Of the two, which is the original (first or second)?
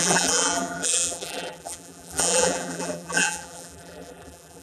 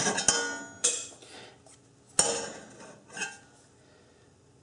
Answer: second